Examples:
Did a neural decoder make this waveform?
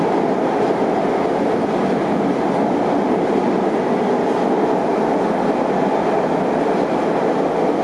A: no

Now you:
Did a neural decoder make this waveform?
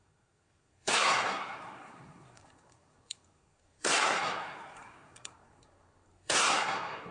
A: yes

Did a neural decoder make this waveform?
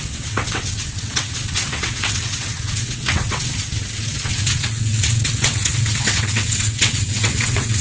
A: yes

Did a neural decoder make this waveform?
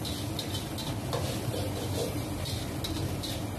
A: no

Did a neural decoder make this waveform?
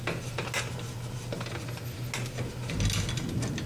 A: no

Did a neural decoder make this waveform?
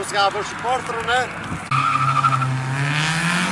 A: no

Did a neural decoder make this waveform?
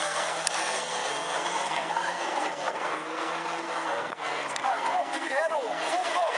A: yes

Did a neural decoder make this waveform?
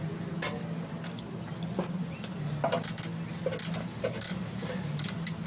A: no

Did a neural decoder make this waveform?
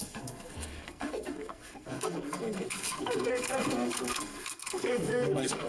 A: yes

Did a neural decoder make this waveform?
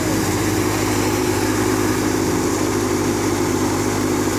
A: yes